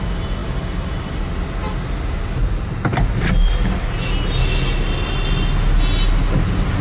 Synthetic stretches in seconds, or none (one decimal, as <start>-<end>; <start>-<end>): none